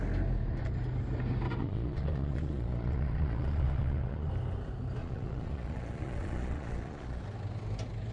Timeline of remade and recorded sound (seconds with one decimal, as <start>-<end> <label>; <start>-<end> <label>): 0.0-1.6 recorded; 1.6-4.3 remade; 4.3-5.0 recorded; 5.0-7.2 remade; 7.2-8.1 recorded